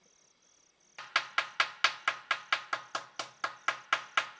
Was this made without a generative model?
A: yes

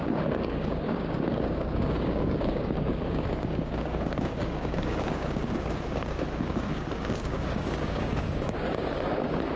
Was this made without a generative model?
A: no